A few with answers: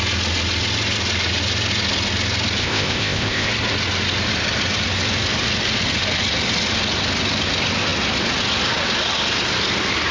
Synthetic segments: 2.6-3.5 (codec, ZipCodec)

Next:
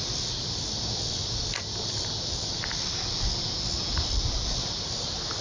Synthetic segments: none

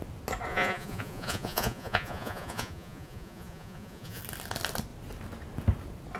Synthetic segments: 0.5-4.2 (vocoder, Vocos)

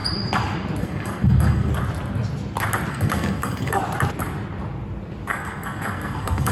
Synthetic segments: 0.8-1.7 (codec, SNAC); 2.9-3.8; 5.3-6.5